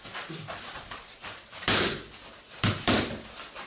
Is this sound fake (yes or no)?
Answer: yes